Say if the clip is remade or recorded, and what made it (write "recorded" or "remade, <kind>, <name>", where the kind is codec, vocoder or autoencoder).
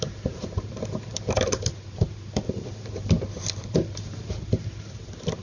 remade, vocoder, BigVGAN v2